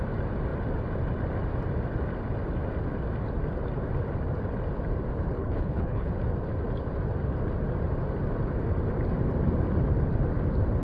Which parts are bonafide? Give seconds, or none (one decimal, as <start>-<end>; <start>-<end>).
0.0-5.4; 6.1-10.8